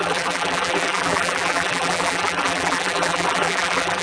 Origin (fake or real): fake